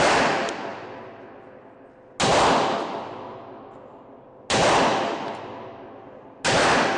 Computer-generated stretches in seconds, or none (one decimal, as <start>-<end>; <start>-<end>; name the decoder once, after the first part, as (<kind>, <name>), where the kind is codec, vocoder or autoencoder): none